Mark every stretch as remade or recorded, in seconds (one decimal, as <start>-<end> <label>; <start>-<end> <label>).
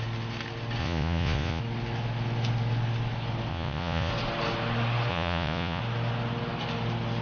0.0-0.8 recorded; 0.8-1.6 remade; 1.6-3.5 recorded; 3.5-4.1 remade; 4.1-5.1 recorded; 5.1-5.8 remade; 5.8-7.2 recorded